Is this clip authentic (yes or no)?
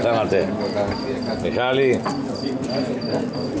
yes